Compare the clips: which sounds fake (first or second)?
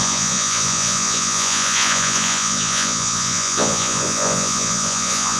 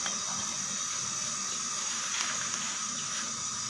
first